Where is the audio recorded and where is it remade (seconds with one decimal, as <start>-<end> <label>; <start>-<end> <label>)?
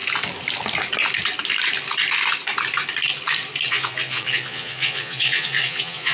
0.0-3.7 recorded; 3.7-6.1 remade